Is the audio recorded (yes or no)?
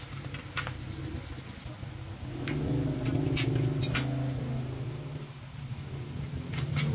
yes